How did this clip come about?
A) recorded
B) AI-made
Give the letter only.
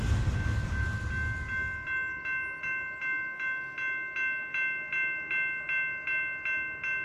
A